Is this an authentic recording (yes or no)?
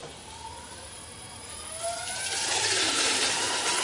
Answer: no